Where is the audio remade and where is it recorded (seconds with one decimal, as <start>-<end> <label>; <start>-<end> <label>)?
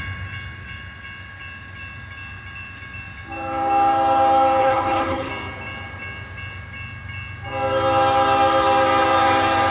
0.0-4.6 recorded; 4.6-5.3 remade; 5.3-9.7 recorded